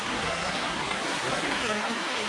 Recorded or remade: remade